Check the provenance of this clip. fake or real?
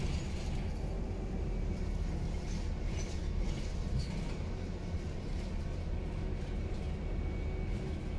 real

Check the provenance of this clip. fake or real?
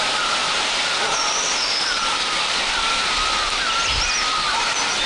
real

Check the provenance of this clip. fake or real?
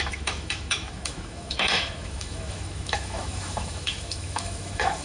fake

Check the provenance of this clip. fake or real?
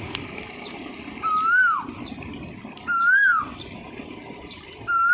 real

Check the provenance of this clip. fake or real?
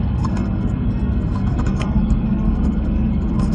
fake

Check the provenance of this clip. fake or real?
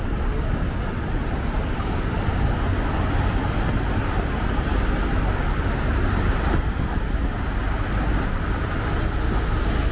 real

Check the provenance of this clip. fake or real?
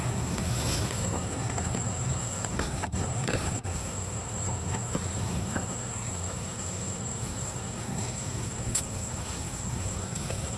fake